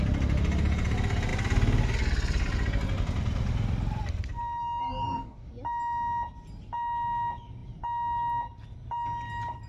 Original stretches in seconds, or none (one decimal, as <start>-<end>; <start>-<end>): 0.0-4.8; 5.5-9.7